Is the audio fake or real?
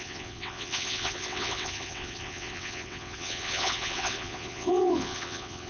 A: fake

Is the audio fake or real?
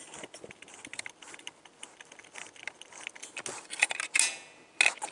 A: real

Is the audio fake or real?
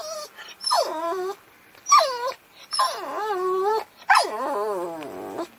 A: fake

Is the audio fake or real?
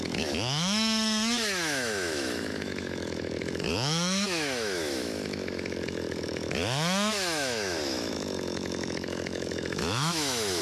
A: fake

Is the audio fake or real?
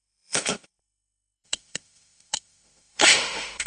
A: fake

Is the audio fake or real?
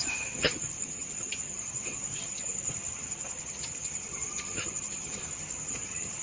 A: fake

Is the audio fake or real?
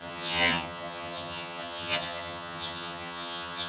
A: fake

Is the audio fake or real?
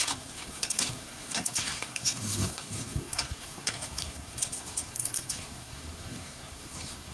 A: fake